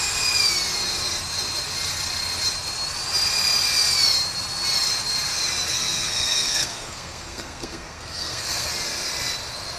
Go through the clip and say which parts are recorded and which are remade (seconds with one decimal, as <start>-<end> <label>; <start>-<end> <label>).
0.0-5.7 recorded; 5.7-8.7 remade; 8.7-9.8 recorded

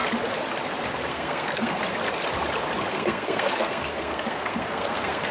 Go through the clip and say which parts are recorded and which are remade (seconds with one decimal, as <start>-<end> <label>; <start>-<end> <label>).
0.0-1.1 recorded; 1.1-1.8 remade; 1.8-2.9 recorded; 2.9-5.3 remade